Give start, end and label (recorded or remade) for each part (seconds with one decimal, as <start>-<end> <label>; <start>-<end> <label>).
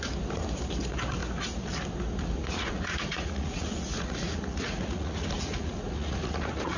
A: 0.0-2.4 recorded; 2.4-6.8 remade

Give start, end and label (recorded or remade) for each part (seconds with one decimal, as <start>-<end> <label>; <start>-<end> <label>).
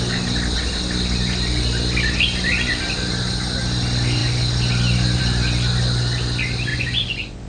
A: 0.0-6.7 recorded; 6.7-7.5 remade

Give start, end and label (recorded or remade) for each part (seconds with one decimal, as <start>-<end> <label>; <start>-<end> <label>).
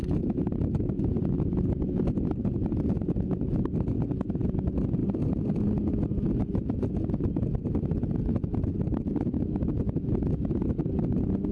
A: 0.0-11.5 recorded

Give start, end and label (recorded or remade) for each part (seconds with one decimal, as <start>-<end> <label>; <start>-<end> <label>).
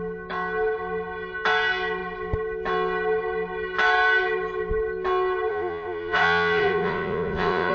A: 0.0-5.5 recorded; 5.5-7.7 remade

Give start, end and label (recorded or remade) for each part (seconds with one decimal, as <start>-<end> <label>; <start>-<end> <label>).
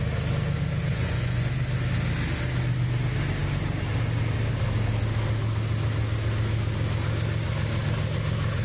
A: 0.0-0.9 recorded; 0.9-1.5 remade; 1.5-8.6 recorded